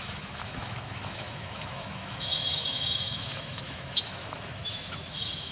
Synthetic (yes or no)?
yes